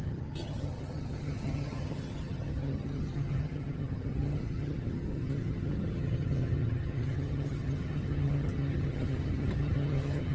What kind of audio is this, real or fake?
fake